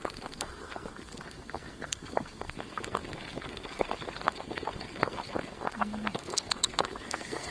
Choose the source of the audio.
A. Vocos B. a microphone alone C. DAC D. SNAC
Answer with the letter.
D